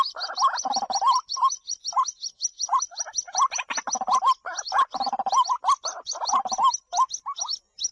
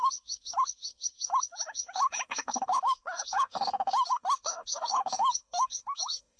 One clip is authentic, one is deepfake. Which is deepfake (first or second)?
second